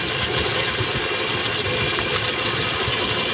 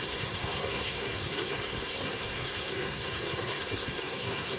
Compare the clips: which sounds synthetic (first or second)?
second